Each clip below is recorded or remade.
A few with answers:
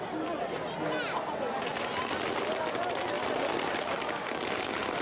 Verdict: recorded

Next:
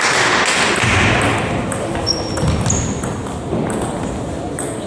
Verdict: recorded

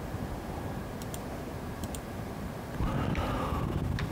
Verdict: remade